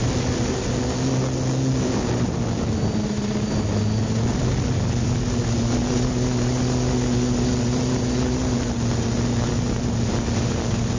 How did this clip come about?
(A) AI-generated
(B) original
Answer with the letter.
B